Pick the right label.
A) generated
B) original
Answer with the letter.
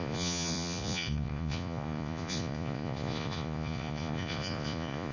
A